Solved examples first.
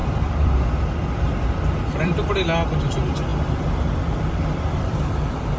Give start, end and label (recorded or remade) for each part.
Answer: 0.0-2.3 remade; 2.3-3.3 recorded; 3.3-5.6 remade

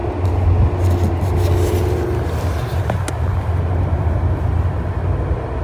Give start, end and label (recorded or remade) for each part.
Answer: 0.0-5.6 recorded